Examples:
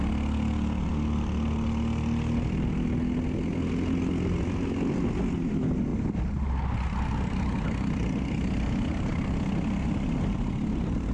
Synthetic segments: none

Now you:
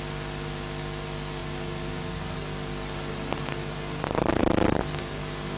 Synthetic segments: none

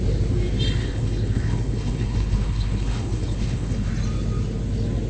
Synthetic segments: 0.8-3.9 (codec, HILCodec)

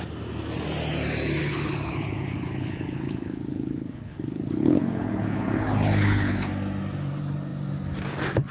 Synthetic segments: 1.4-6.5 (codec, HILCodec)

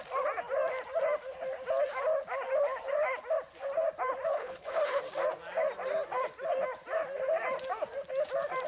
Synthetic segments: 4.3-5.0 (codec, HILCodec)

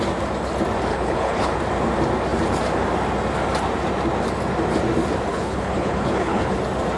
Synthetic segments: 0.9-1.6 (codec, HILCodec); 5.3-6.6

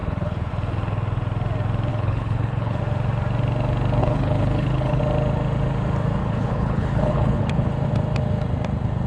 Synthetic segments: 0.0-0.5 (codec, HILCodec); 1.9-2.8; 4.0-5.0; 6.2-7.7

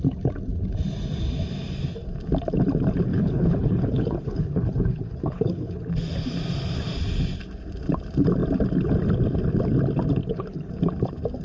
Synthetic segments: 3.1-5.9 (codec, HILCodec); 10.2-10.7